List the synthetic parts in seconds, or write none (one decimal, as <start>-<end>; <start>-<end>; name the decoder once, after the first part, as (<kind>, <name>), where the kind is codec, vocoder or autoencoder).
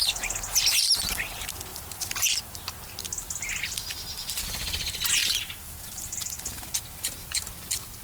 1.7-2.4 (vocoder, BigVGAN v2); 5.2-6.7